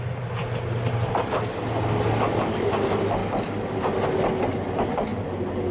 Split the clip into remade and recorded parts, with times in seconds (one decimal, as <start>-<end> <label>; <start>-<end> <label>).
0.0-5.7 recorded